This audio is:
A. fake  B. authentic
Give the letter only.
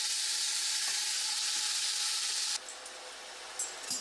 B